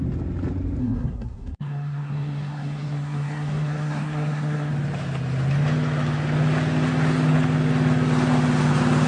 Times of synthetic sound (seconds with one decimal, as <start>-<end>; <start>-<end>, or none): 0.8-4.7